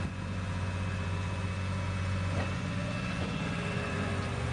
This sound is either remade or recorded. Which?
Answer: remade